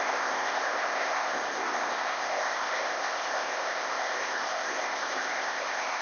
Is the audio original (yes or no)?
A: no